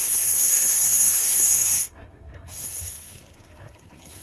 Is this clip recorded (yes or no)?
no